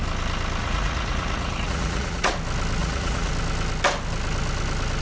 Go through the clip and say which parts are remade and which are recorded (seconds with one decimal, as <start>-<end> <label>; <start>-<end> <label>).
0.0-0.6 recorded; 0.6-2.3 remade; 2.3-2.8 recorded; 2.8-3.3 remade; 3.3-5.0 recorded